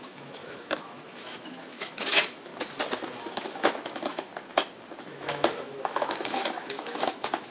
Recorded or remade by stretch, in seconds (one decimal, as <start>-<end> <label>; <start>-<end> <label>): 0.0-2.5 remade; 2.5-3.1 recorded; 3.1-4.3 remade; 4.3-5.0 recorded; 5.0-7.5 remade